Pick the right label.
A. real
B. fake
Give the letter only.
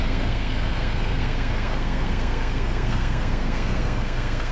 B